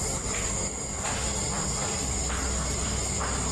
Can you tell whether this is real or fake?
real